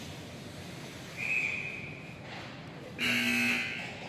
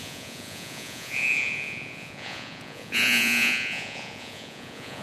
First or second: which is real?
first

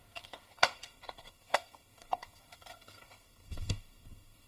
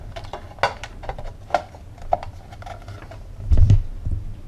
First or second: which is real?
second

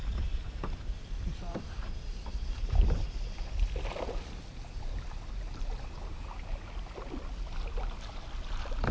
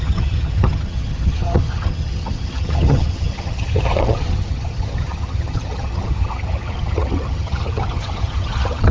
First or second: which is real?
first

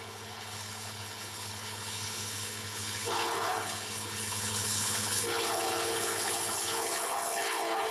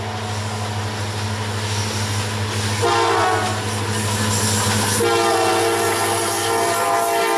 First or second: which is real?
second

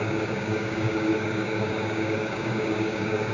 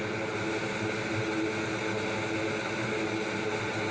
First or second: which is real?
second